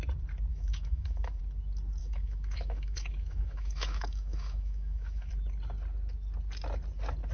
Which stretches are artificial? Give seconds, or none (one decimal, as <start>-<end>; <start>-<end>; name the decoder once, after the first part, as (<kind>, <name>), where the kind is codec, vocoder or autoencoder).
0.5-1.4 (autoencoder, DAC-VAE); 2.0-5.3